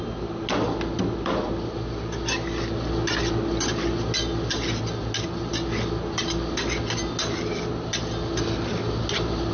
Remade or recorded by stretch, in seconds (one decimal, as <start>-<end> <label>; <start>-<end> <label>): 0.0-9.5 recorded